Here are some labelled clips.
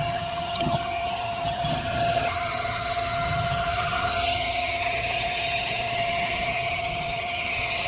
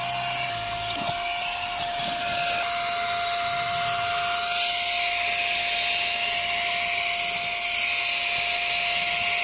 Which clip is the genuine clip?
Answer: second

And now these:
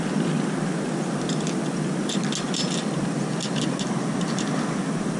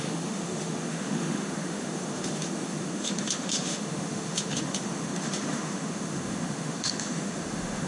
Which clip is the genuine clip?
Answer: first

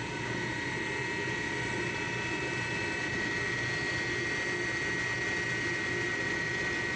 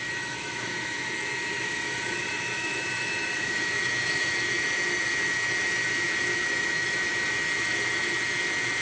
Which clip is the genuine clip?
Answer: first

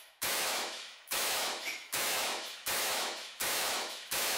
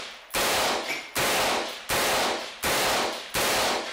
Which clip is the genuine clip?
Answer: second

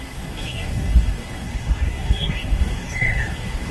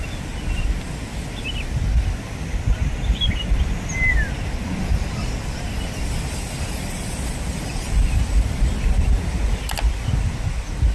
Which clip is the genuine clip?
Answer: second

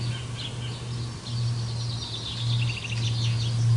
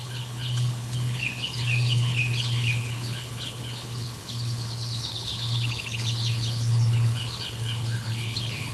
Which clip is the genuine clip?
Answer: first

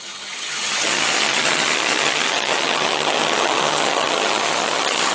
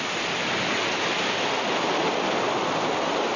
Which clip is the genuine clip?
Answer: second